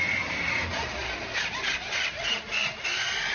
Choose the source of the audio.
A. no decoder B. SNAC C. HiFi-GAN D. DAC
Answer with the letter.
A